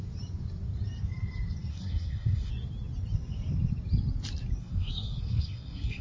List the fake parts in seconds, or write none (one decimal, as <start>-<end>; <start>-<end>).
1.7-2.5; 4.6-6.0